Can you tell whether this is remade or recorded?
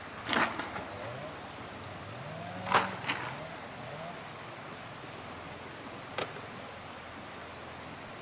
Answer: recorded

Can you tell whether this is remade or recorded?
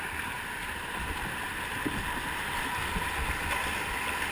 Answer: recorded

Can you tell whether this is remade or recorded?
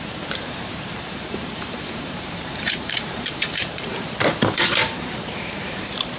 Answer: remade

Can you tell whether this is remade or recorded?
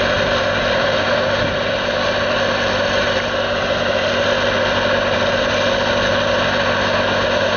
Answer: recorded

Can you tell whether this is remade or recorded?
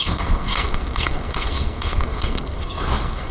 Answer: remade